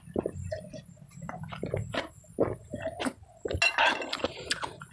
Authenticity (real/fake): real